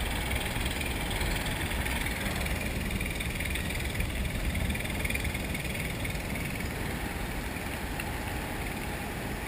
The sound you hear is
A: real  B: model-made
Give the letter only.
A